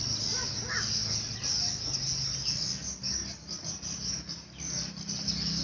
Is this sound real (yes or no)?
yes